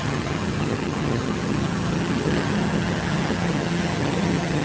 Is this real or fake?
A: fake